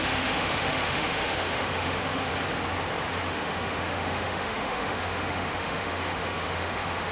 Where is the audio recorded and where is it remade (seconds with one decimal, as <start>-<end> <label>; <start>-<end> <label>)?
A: 0.0-2.3 remade; 2.3-3.1 recorded; 3.1-7.1 remade